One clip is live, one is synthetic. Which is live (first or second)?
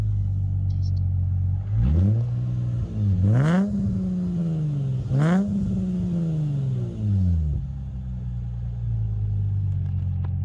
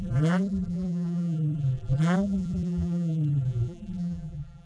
first